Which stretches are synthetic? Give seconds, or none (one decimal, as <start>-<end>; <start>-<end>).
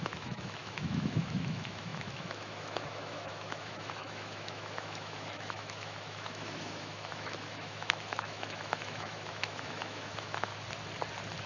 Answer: 0.0-10.5